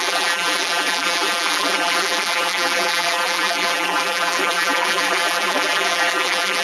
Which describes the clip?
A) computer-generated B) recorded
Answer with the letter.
A